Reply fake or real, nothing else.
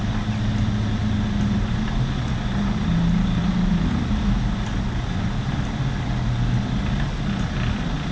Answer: real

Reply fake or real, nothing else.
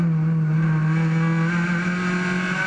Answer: real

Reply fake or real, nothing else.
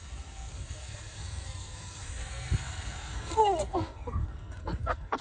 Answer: fake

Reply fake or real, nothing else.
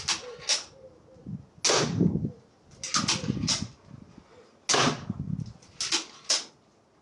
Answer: real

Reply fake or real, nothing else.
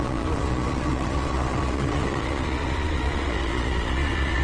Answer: fake